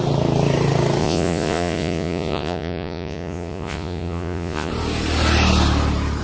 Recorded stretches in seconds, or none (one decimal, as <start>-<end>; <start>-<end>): 0.0-1.0; 4.7-6.2